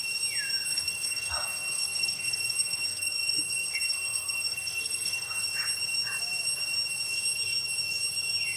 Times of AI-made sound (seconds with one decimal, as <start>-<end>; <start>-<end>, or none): 0.7-5.4